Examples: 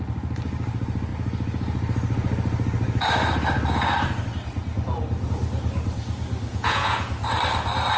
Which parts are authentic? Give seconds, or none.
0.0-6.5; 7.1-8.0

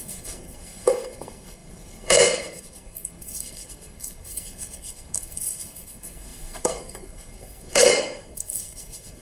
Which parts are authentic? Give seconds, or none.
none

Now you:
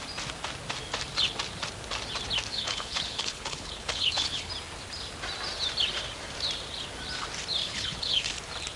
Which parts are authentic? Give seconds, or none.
0.0-2.5; 4.5-7.6; 8.3-8.8

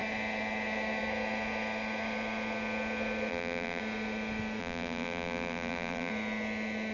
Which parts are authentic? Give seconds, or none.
0.0-3.3; 3.8-4.6; 6.1-6.9